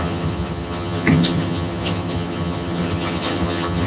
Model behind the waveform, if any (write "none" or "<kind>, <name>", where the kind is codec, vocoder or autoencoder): vocoder, HiFi-GAN